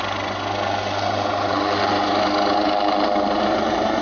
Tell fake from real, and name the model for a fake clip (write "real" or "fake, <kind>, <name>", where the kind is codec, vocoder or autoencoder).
real